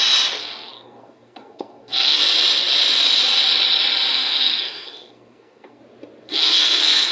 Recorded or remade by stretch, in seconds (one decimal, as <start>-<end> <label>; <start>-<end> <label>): 0.0-0.4 recorded; 0.4-2.2 remade; 2.2-4.1 recorded; 4.1-5.8 remade; 5.8-6.2 recorded; 6.2-7.1 remade